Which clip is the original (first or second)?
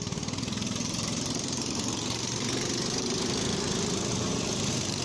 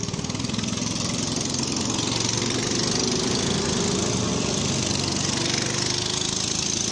second